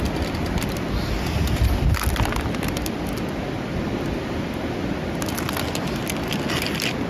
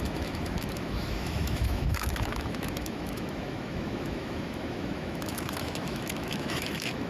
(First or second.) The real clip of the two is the first